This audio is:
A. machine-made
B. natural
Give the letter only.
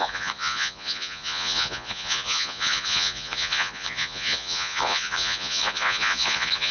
A